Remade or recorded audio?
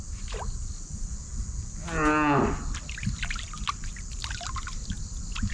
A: recorded